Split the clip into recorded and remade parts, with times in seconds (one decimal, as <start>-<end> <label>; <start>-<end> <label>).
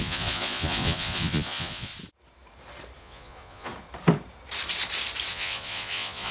0.0-1.9 remade; 1.9-3.0 recorded; 3.0-3.7 remade; 3.7-5.3 recorded; 5.3-6.3 remade